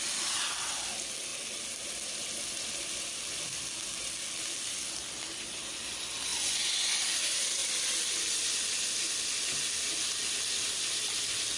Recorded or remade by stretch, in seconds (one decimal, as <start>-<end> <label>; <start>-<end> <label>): 0.0-6.3 recorded; 6.3-7.0 remade; 7.0-11.6 recorded